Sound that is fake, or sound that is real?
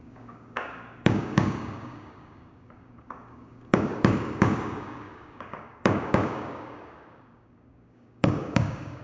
fake